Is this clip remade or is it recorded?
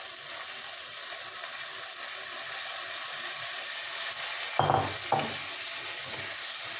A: recorded